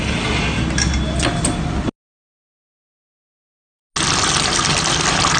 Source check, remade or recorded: recorded